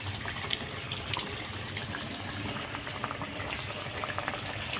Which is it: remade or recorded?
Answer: recorded